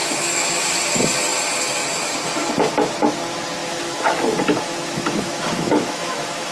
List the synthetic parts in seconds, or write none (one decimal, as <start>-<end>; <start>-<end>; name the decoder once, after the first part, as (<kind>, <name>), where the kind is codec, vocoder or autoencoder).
0.0-0.8 (autoencoder, DAC-VAE); 3.6-6.5